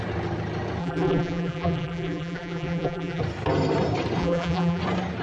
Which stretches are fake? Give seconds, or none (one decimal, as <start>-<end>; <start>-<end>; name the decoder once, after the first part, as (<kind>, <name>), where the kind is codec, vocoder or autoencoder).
0.8-3.2 (vocoder, BigVGAN v2); 4.2-4.8